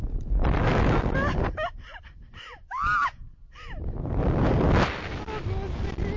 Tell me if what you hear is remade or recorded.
recorded